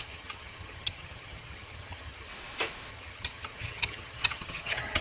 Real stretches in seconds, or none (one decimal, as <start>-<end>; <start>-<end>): 2.3-2.9